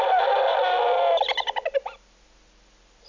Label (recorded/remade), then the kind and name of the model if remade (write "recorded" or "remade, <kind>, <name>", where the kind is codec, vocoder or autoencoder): recorded